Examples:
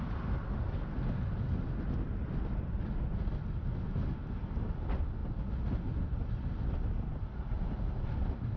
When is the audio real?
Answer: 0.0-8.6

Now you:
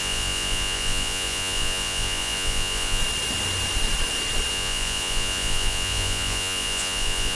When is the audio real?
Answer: 3.0-4.5

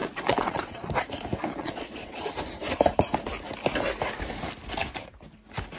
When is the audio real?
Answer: 0.9-1.6; 2.2-5.8

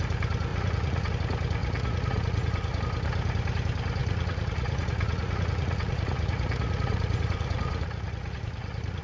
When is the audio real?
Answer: 0.0-0.5; 1.1-1.6; 2.8-4.0

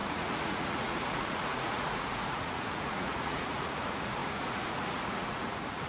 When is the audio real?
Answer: none

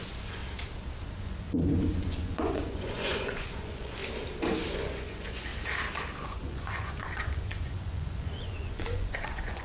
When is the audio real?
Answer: 0.4-1.1; 4.0-4.7; 5.5-6.2

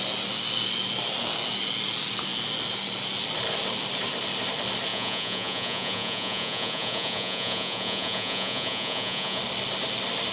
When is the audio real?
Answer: 0.0-4.9; 9.4-10.3